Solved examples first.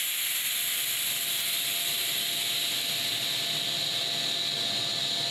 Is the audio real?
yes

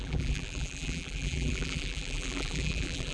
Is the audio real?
no